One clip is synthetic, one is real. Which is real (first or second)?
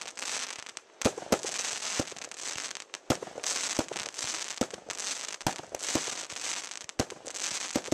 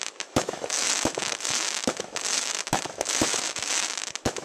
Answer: first